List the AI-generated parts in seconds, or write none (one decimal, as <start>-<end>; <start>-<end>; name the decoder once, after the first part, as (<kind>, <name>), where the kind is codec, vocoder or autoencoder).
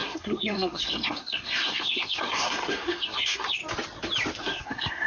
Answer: 0.0-3.6 (codec, SNAC); 4.4-5.1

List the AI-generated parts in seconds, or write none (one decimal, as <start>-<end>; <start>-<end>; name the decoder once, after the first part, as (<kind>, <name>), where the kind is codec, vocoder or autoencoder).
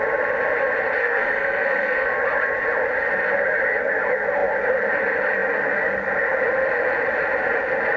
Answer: 1.0-2.1 (codec, SNAC)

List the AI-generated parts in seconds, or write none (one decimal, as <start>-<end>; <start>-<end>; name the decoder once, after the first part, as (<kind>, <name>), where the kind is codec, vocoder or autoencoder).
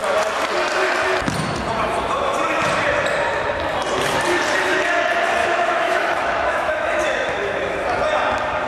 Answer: 5.4-8.0 (autoencoder, DAC-VAE)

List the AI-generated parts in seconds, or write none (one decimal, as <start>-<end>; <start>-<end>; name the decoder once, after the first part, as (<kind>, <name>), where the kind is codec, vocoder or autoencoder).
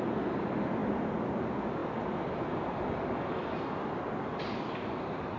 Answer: none